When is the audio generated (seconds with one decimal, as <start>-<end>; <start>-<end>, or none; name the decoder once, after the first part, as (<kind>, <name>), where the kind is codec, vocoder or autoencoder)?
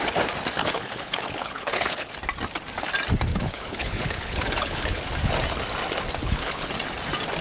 0.6-2.1 (codec, HILCodec); 3.3-5.0; 6.2-6.7